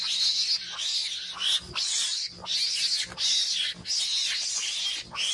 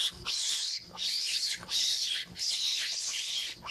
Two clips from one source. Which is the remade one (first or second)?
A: second